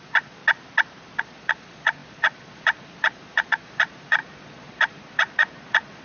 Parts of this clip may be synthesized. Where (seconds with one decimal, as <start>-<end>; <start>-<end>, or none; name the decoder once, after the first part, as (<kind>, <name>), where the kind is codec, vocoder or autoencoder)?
0.0-0.4 (vocoder, Vocos); 1.2-6.0